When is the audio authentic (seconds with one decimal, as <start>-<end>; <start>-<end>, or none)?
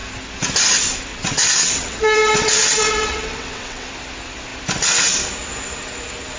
0.0-1.1; 3.9-6.4